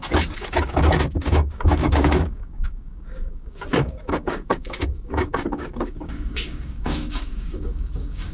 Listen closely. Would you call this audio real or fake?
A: fake